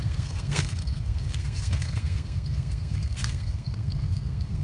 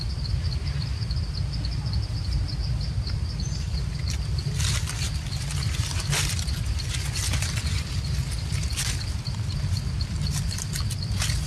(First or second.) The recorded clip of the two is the second